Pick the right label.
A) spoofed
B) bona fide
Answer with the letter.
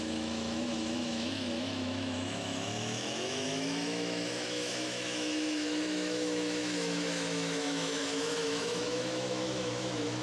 A